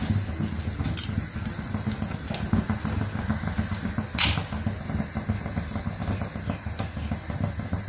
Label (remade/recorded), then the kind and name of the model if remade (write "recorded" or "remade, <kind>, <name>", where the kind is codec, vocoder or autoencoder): recorded